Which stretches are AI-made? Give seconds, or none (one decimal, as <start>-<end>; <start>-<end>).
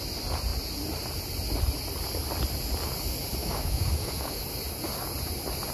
3.4-4.4